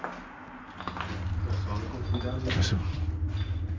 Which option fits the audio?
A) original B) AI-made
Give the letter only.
A